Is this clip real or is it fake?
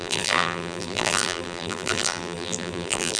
fake